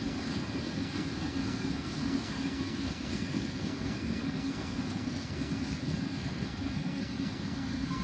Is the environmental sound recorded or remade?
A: remade